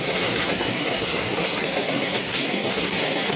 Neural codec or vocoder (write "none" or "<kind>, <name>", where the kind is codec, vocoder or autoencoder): codec, SNAC